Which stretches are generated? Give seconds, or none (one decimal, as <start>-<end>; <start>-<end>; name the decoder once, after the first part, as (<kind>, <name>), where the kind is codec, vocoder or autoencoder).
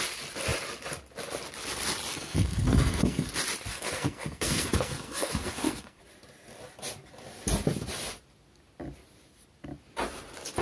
2.1-3.3 (codec, SNAC); 3.7-6.0